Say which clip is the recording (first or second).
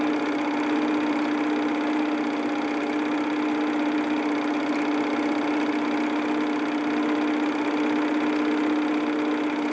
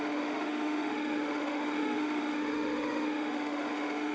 first